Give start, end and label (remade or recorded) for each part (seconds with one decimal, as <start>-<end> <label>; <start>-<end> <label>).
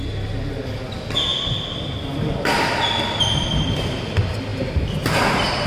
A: 0.0-5.7 recorded